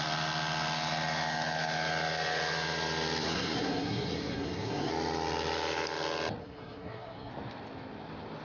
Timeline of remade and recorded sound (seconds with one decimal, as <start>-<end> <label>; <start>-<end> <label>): 0.0-3.2 recorded; 3.2-4.9 remade; 4.9-6.4 recorded; 6.4-7.3 remade; 7.3-8.4 recorded